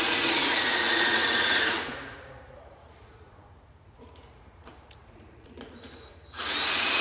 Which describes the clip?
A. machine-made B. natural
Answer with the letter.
A